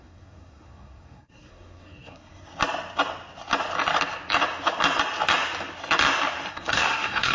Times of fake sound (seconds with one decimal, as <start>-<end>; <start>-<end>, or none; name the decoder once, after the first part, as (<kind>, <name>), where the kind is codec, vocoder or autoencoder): 0.0-2.5 (codec, SNAC); 6.5-7.3